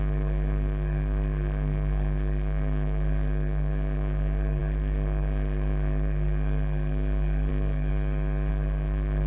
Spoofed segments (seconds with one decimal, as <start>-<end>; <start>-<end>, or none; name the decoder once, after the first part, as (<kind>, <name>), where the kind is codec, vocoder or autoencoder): 0.0-7.9 (codec, SNAC); 8.5-9.3